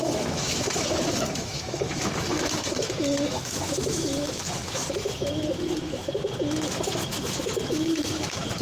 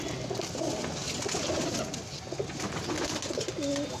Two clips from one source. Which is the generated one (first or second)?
first